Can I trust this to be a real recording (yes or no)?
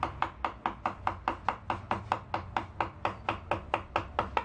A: yes